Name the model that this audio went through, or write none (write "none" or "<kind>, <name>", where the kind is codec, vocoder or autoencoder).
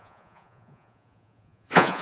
vocoder, Vocos